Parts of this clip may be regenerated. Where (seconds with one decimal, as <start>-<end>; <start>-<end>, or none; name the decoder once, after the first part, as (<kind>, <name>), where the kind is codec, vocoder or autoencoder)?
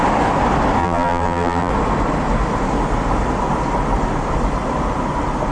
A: 0.8-1.7 (vocoder, BigVGAN v2)